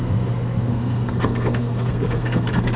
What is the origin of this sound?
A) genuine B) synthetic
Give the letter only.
B